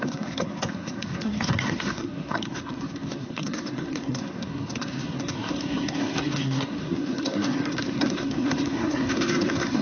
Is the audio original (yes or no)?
no